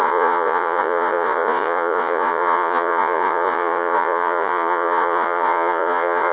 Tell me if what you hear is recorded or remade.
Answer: remade